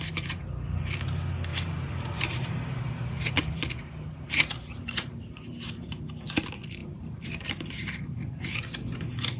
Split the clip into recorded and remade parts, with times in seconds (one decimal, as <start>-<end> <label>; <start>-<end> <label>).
0.0-1.5 recorded; 1.5-5.8 remade; 5.8-6.8 recorded; 6.8-7.5 remade; 7.5-9.4 recorded